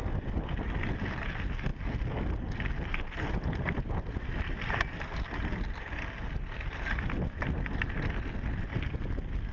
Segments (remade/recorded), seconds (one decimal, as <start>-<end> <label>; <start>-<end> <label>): 0.0-9.5 recorded